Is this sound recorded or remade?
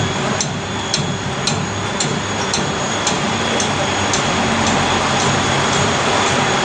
recorded